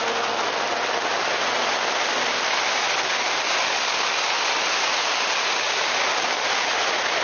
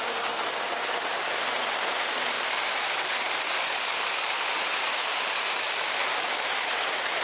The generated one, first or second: second